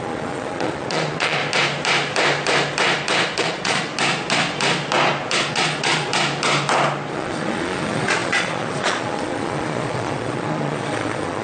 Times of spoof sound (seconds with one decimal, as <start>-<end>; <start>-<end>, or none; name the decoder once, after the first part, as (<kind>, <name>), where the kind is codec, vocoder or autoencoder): 0.0-1.4 (vocoder, Vocos); 3.4-3.9; 5.5-6.1; 7.1-11.4